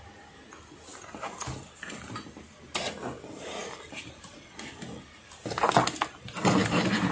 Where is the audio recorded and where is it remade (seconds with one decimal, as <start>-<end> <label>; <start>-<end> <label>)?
0.0-7.1 recorded